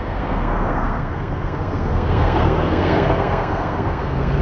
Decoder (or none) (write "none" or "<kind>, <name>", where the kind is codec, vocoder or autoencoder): codec, SNAC